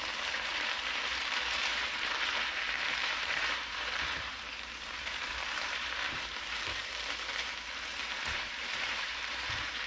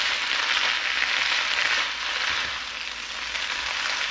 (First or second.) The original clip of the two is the second